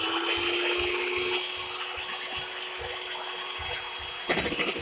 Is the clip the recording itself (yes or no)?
yes